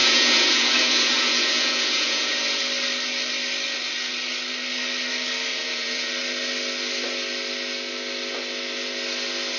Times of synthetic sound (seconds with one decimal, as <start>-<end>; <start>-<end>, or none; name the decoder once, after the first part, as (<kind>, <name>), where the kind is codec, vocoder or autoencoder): 0.0-2.6 (vocoder, Vocos); 5.5-6.1